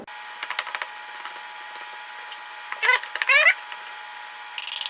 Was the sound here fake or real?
real